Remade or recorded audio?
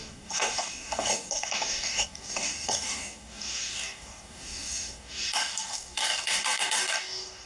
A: remade